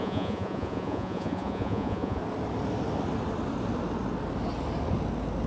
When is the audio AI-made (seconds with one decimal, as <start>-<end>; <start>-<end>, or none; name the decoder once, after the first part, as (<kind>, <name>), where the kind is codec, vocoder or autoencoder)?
0.0-2.2 (vocoder, Vocos)